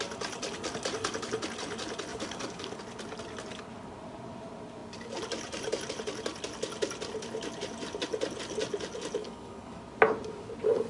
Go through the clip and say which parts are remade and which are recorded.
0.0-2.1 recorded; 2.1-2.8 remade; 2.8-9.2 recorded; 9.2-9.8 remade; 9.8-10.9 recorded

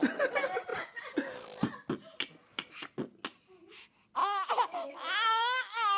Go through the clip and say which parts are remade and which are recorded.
0.0-4.2 recorded; 4.2-6.0 remade

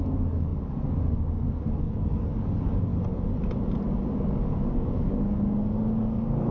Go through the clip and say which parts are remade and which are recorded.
0.0-2.9 remade; 2.9-4.1 recorded; 4.1-6.5 remade

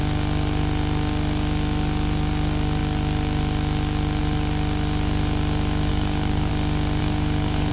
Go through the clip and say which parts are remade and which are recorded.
0.0-5.9 recorded; 5.9-6.5 remade; 6.5-7.0 recorded; 7.0-7.7 remade